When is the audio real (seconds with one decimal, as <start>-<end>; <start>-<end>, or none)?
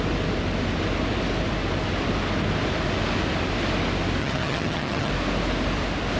0.0-4.2; 5.1-6.2